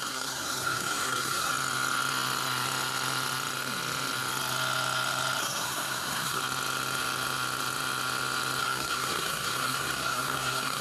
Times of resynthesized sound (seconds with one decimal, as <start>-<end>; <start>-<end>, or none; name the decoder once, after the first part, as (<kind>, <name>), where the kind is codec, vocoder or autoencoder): 0.0-1.5 (codec, SNAC); 5.4-6.4; 8.6-10.8